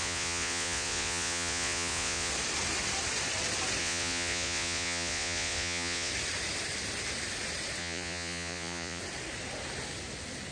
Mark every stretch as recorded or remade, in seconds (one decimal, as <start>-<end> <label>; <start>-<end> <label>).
0.0-2.3 remade; 2.3-3.8 recorded; 3.8-6.1 remade; 6.1-7.8 recorded; 7.8-9.0 remade; 9.0-10.5 recorded